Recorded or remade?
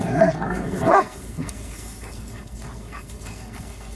remade